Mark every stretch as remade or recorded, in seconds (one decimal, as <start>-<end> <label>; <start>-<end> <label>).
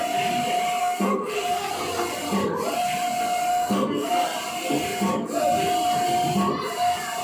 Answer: 0.0-0.8 recorded; 0.8-1.7 remade; 1.7-3.5 recorded; 3.5-4.1 remade; 4.1-7.2 recorded